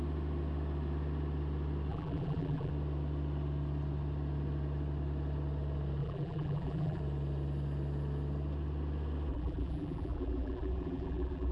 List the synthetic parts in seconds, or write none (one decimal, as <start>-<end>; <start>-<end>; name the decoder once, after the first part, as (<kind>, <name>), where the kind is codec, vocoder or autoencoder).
1.9-2.7 (vocoder, BigVGAN v2); 6.0-7.0; 9.3-11.5